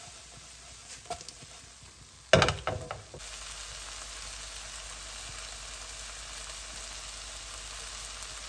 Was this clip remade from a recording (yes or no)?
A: no